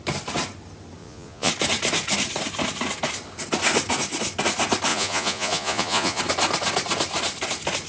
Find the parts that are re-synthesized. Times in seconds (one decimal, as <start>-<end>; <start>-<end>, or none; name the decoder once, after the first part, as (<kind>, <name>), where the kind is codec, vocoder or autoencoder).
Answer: 1.0-1.5 (vocoder, Vocos); 4.9-6.2